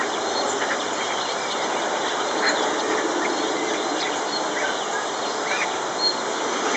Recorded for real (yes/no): yes